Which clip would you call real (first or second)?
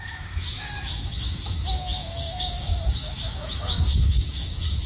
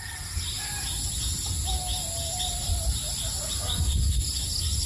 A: second